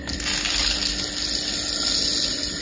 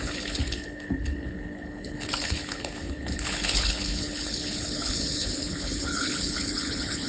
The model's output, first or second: second